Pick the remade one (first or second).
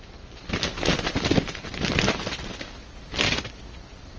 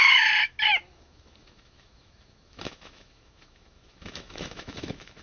second